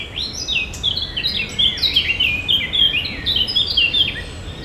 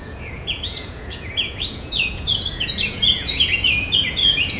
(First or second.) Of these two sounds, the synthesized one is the second